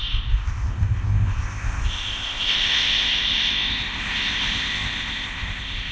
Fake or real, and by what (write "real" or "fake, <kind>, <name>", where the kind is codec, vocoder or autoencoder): fake, codec, ZipCodec